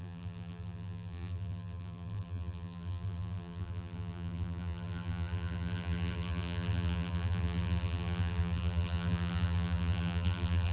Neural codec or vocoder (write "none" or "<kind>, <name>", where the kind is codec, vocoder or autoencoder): vocoder, BigVGAN v2